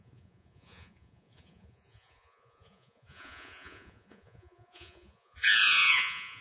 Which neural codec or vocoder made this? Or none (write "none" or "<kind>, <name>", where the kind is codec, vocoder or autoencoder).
vocoder, Vocos